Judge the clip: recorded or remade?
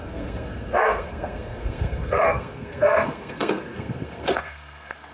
remade